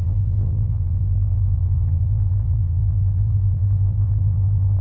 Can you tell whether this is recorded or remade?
remade